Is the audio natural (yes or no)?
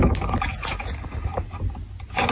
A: yes